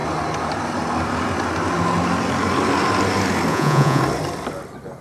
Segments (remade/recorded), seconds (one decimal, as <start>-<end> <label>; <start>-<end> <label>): 0.0-3.5 recorded; 3.5-4.0 remade; 4.0-5.0 recorded